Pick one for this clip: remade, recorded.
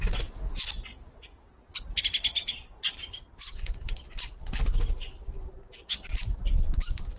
recorded